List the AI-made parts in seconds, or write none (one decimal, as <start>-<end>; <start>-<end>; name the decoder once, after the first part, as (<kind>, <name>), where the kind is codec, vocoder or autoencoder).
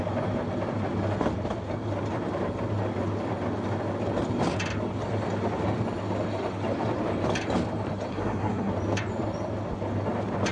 8.1-8.7 (codec, SNAC)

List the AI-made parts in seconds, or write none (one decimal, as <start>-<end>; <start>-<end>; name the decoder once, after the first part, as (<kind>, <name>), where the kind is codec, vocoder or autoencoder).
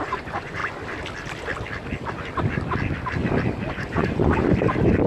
0.0-0.6 (vocoder, Vocos); 3.7-4.4